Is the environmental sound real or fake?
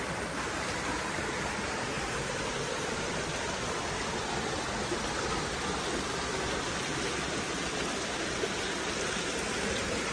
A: real